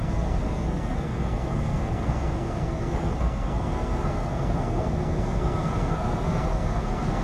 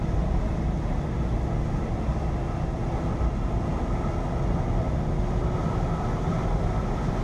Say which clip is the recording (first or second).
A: second